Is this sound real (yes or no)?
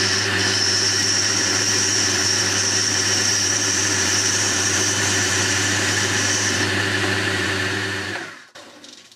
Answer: no